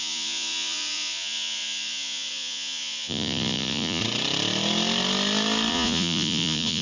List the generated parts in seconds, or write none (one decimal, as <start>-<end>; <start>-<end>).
0.0-4.0; 5.7-6.8